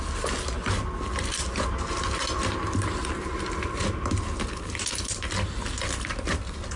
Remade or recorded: recorded